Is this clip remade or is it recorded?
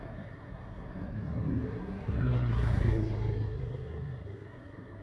remade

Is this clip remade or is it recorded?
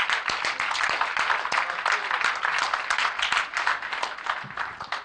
recorded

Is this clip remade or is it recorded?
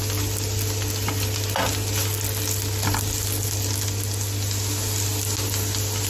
recorded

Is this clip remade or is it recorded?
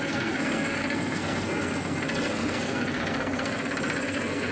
remade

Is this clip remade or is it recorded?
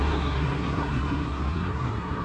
remade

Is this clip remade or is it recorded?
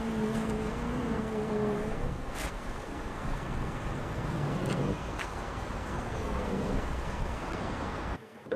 remade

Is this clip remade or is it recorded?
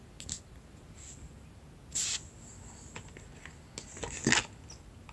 recorded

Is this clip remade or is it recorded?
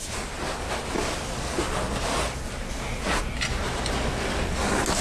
recorded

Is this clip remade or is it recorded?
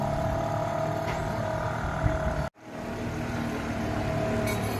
recorded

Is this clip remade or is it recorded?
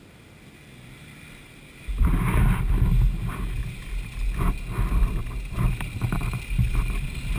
recorded